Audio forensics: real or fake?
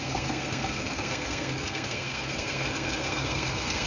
fake